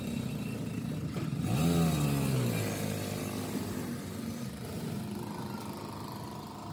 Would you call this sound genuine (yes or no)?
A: yes